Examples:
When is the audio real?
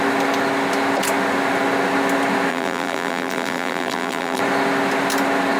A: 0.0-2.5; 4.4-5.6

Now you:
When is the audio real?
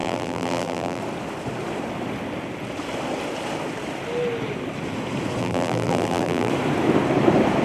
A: 1.0-5.4; 6.5-7.6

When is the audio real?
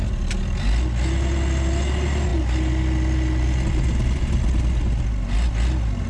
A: 0.0-6.1